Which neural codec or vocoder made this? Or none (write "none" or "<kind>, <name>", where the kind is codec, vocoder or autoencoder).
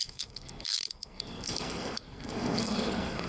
codec, SNAC